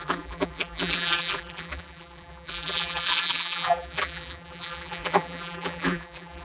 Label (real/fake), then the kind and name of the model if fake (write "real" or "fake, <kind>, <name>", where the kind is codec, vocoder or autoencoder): fake, vocoder, BigVGAN v2